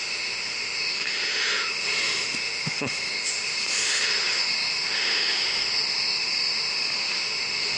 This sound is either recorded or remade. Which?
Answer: remade